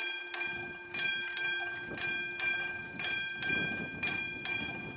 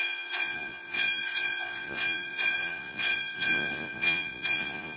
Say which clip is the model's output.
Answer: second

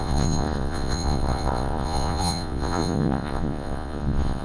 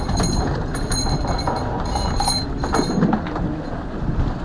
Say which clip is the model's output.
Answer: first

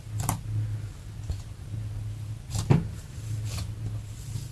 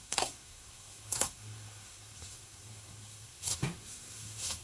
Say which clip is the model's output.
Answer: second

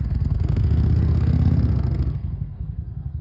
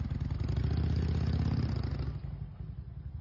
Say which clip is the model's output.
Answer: first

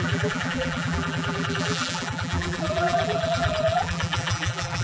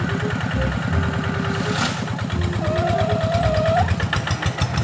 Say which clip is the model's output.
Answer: first